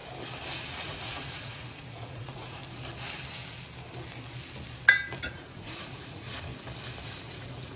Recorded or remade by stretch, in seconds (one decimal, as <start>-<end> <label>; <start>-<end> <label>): 0.0-0.7 recorded; 0.7-2.6 remade; 2.6-5.2 recorded; 5.2-6.5 remade; 6.5-7.0 recorded; 7.0-7.8 remade